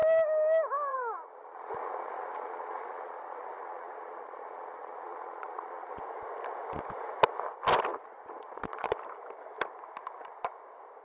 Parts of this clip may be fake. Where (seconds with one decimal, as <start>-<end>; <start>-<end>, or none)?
0.9-6.0; 7.9-9.0